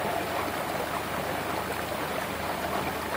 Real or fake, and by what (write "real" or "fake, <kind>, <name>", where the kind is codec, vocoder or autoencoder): real